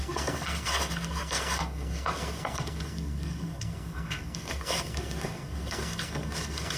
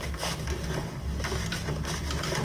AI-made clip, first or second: first